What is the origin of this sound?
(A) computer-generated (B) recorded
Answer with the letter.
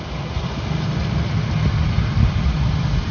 B